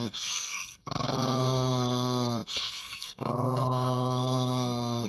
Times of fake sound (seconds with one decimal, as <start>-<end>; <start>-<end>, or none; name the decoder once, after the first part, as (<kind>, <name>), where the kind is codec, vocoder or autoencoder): 0.0-5.1 (codec, SNAC)